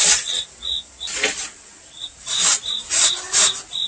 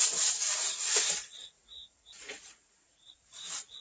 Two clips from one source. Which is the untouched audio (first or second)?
first